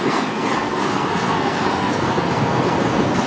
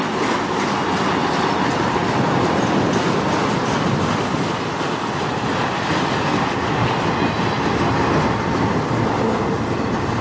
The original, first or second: second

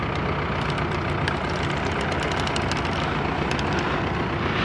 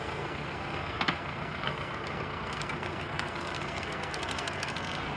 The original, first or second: first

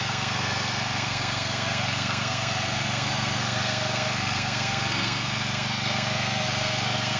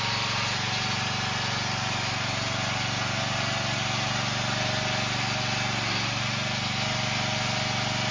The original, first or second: second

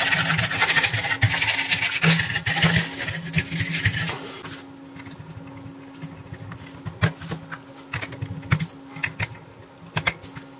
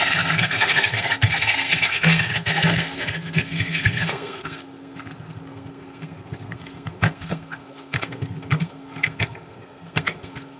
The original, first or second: first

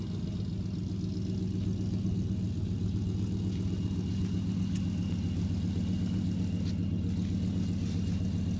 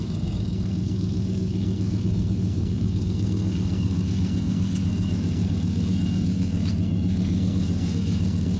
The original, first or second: first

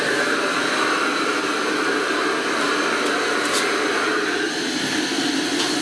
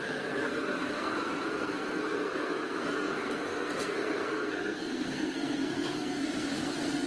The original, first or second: first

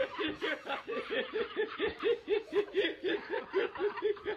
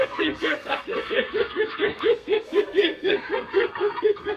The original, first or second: first